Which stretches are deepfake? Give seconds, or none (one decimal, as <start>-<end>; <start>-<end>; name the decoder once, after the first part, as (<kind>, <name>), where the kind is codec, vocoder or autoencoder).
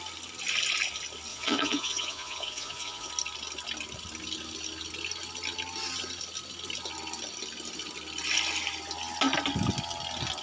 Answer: 1.3-3.1 (vocoder, Vocos)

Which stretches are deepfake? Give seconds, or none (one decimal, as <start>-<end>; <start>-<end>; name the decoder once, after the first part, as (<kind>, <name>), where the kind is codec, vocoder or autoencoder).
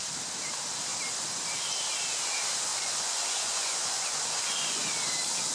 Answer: 2.7-4.9 (vocoder, Vocos)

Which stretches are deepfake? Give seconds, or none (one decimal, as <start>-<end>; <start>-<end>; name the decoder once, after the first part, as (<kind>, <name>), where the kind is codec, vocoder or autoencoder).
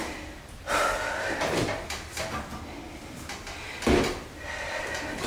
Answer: 0.0-1.6 (vocoder, BigVGAN v2); 4.8-5.3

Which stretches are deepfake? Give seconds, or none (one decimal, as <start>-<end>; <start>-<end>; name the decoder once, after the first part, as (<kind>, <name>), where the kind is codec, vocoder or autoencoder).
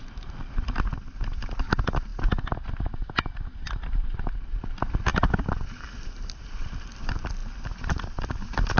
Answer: 5.1-7.0 (vocoder, BigVGAN v2)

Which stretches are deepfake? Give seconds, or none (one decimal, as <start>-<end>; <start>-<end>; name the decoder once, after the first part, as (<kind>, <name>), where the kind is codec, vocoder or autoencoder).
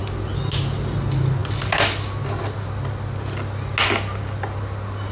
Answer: none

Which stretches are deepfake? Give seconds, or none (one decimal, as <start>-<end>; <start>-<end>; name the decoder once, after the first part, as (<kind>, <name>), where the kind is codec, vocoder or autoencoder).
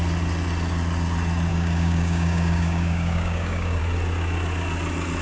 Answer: 1.5-3.8 (codec, DAC)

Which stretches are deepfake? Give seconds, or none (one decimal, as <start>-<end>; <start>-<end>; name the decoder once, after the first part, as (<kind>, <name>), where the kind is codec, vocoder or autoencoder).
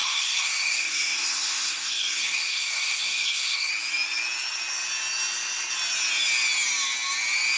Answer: 0.0-3.7 (codec, SNAC)